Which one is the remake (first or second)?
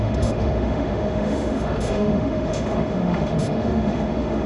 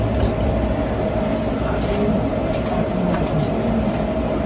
first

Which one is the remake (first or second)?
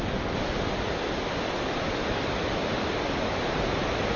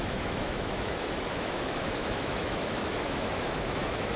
second